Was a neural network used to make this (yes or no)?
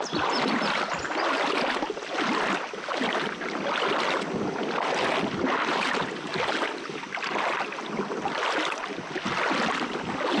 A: no